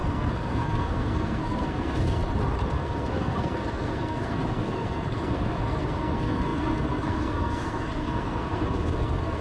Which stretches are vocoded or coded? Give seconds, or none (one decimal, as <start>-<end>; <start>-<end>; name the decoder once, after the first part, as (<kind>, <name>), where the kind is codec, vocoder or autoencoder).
0.0-2.2 (codec, SNAC); 2.7-9.4